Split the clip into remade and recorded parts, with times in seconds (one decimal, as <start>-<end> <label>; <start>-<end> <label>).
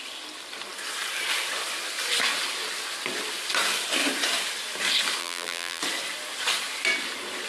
0.0-5.2 recorded; 5.2-5.8 remade; 5.8-7.5 recorded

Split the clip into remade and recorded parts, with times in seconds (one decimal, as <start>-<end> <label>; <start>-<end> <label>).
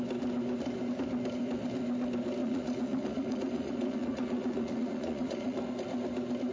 0.0-2.4 recorded; 2.4-5.6 remade; 5.6-6.5 recorded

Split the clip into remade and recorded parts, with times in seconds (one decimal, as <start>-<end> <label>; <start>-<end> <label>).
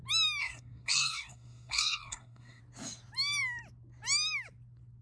0.0-0.4 recorded; 0.4-2.6 remade; 2.6-5.0 recorded